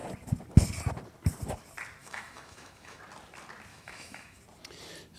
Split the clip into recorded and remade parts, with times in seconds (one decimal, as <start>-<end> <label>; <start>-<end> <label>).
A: 0.0-2.0 recorded; 2.0-3.0 remade; 3.0-3.7 recorded; 3.7-4.4 remade; 4.4-5.2 recorded